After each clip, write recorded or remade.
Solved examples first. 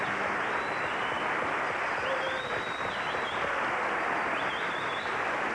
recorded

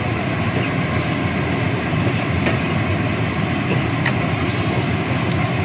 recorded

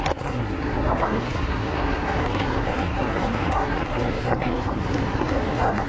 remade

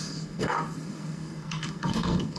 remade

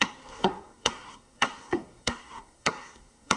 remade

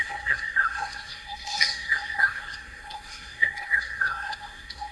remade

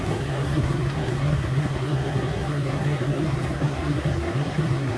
remade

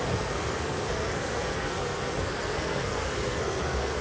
remade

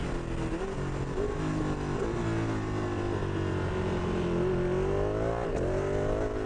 recorded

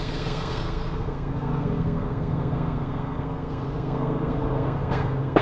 remade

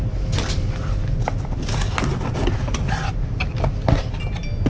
recorded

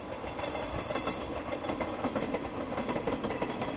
recorded